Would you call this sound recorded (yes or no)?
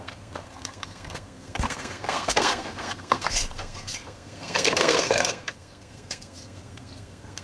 no